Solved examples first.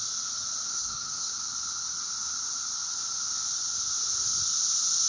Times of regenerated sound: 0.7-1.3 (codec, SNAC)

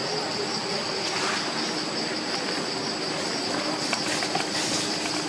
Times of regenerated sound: none

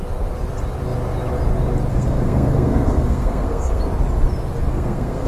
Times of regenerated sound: 1.9-3.8 (codec, SNAC); 4.7-5.3

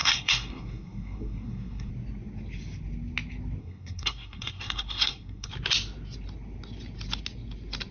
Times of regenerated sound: 0.0-1.9 (codec, SNAC); 3.6-5.5

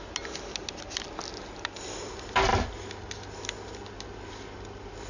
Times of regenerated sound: none

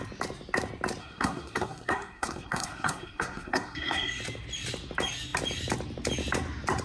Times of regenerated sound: 1.0-4.2 (codec, SNAC)

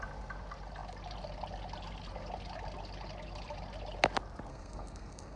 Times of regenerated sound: 4.5-5.4 (codec, SNAC)